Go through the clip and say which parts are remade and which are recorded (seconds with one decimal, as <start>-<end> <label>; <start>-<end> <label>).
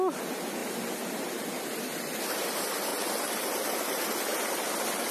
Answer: 0.0-2.9 recorded; 2.9-3.5 remade; 3.5-5.1 recorded